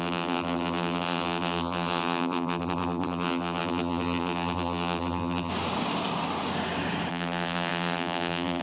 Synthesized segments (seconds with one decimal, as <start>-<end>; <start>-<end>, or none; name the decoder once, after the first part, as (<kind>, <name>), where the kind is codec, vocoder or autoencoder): 0.0-5.5 (vocoder, BigVGAN v2); 7.1-8.6